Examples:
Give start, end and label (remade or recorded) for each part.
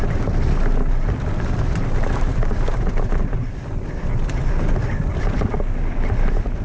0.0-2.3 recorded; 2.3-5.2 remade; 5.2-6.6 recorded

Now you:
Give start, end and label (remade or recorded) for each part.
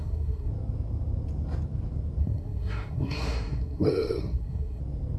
0.0-0.5 remade; 0.5-2.2 recorded; 2.2-4.8 remade; 4.8-5.2 recorded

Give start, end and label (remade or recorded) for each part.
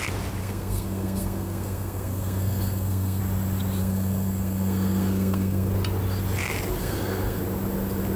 0.0-0.4 recorded; 0.4-3.2 remade; 3.2-3.8 recorded; 3.8-5.7 remade; 5.7-6.8 recorded; 6.8-7.4 remade; 7.4-8.2 recorded